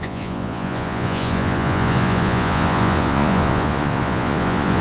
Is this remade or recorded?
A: remade